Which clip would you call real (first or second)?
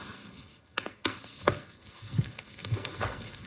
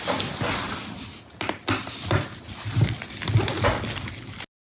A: second